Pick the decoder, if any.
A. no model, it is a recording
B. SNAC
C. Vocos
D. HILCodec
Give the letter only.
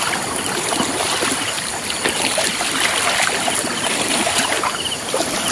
A